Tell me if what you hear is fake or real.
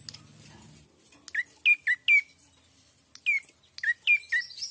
real